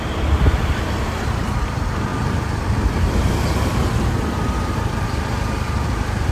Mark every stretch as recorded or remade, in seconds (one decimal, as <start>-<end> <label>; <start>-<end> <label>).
0.0-6.3 remade